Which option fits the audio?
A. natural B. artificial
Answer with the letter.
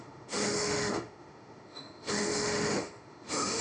B